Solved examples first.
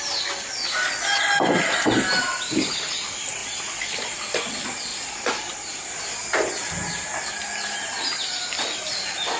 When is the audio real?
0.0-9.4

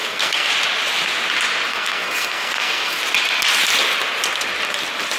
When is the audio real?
0.5-1.7; 3.0-5.2

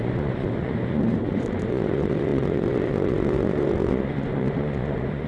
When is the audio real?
none

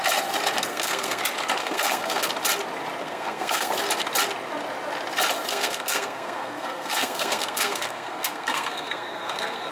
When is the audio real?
0.0-0.7; 1.2-1.6; 2.3-3.0; 3.7-5.5